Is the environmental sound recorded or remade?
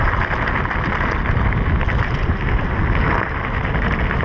recorded